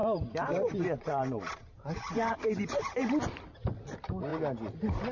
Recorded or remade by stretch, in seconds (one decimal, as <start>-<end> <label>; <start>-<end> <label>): 0.0-3.1 remade; 3.1-5.1 recorded